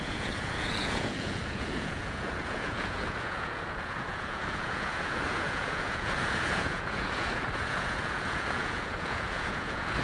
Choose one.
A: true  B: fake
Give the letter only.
B